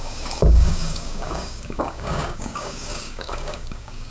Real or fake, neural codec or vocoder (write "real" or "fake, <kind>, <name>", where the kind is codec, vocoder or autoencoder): fake, codec, DAC